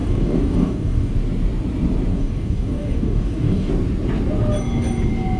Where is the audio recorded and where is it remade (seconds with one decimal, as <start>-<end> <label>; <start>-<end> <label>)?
0.0-1.1 remade; 1.1-2.1 recorded; 2.1-3.7 remade; 3.7-5.4 recorded